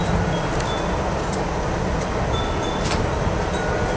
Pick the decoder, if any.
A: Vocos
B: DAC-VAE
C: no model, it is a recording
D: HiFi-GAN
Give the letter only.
C